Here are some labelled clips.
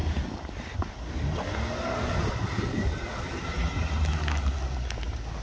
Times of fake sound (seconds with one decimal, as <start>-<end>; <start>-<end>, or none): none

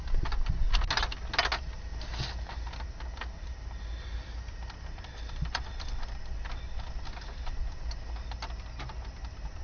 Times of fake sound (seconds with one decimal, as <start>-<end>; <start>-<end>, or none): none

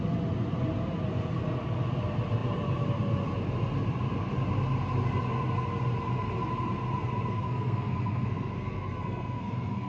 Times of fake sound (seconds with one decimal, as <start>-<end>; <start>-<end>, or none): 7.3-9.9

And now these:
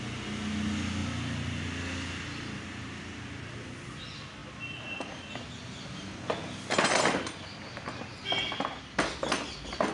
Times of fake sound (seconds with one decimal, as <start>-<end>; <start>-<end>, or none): none

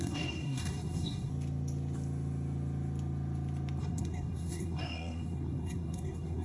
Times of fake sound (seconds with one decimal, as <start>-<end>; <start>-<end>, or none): 0.0-1.3; 3.8-6.4